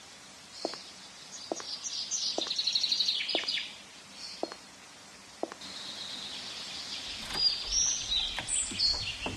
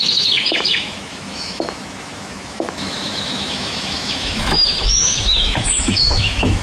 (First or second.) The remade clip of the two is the second